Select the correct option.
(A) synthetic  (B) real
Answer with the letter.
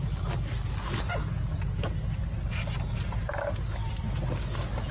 B